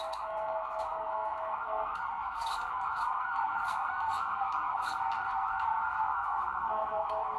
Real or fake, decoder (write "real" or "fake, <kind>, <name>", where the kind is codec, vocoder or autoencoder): fake, codec, SNAC